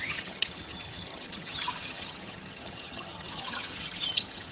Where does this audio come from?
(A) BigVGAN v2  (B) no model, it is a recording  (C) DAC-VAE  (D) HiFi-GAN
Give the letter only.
D